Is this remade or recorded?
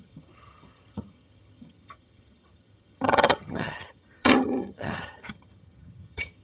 remade